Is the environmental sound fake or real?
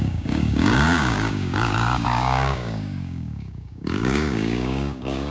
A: fake